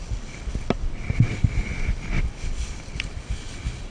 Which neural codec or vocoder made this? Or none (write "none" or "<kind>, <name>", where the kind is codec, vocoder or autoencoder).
none